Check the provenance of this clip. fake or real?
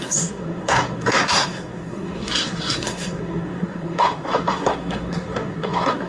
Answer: fake